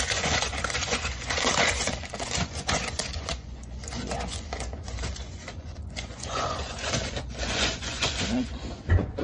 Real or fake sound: fake